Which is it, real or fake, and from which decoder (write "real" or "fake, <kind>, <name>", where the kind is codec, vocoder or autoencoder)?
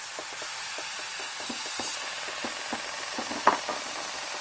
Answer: real